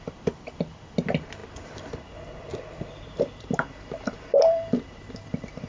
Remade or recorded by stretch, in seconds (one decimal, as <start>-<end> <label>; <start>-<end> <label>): 0.0-5.7 remade